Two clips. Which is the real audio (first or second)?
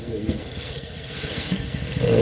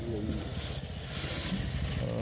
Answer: second